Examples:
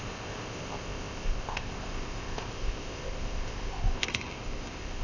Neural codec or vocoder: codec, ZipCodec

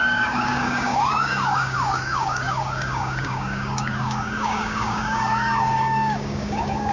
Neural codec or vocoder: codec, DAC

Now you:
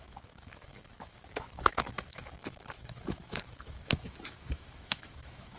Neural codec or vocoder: autoencoder, DAC-VAE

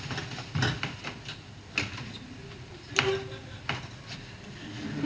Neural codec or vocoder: none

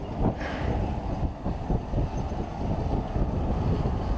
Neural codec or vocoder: none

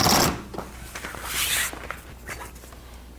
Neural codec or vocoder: none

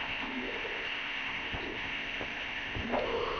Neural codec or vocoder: codec, ZipCodec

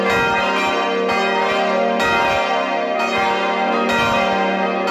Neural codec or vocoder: none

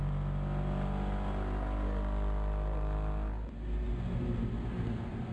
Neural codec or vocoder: none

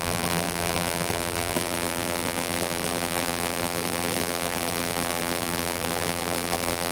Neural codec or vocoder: vocoder, BigVGAN v2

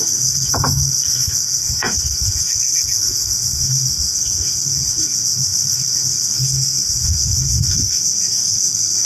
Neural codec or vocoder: codec, SNAC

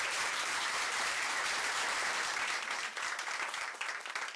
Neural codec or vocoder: vocoder, BigVGAN v2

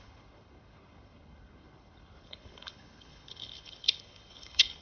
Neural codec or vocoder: codec, HILCodec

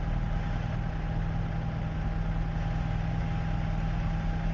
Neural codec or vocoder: none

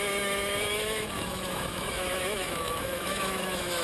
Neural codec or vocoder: autoencoder, DAC-VAE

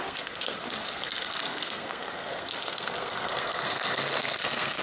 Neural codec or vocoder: codec, SNAC